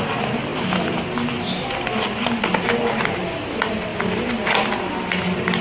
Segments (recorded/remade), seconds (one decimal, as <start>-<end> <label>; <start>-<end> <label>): 0.0-5.6 recorded